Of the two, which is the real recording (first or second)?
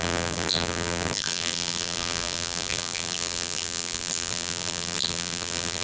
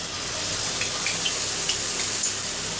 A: second